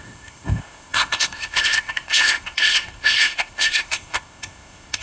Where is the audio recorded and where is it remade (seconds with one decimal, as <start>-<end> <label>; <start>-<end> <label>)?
0.0-5.0 remade